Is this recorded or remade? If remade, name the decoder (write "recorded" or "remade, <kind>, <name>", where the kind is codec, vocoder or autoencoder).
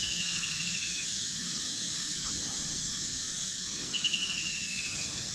remade, codec, SNAC